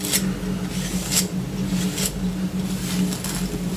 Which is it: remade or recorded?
recorded